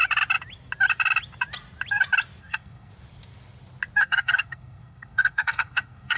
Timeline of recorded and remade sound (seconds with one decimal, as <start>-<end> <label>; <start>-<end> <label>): 0.0-2.4 recorded; 2.4-2.9 remade; 2.9-4.0 recorded; 4.0-6.2 remade